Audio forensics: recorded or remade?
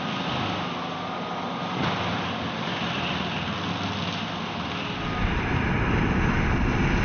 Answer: recorded